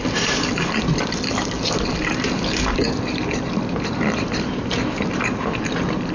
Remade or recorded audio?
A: recorded